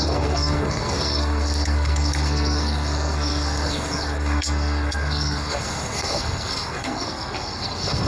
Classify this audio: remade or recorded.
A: remade